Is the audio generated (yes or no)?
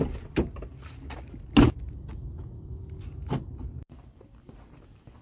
no